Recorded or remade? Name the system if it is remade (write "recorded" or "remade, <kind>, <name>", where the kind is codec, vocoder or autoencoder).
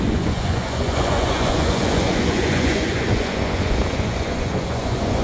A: remade, vocoder, Vocos